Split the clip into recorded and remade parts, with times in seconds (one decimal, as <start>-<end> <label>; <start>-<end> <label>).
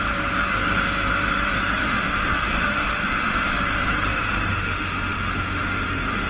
0.0-1.8 recorded; 1.8-3.5 remade; 3.5-4.5 recorded; 4.5-6.3 remade